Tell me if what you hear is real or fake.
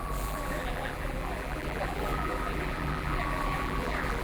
fake